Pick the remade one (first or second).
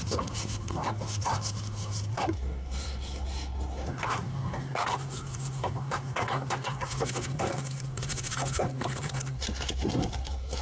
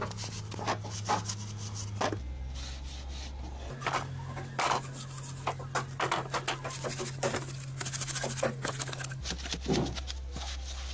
first